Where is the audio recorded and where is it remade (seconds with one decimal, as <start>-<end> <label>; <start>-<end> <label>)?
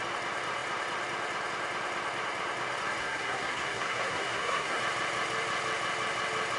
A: 0.0-3.0 recorded; 3.0-4.8 remade; 4.8-6.6 recorded